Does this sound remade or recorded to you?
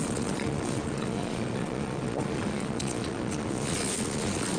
remade